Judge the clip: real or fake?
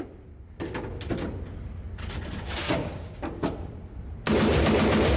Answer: real